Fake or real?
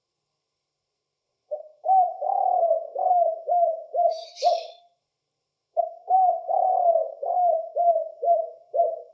fake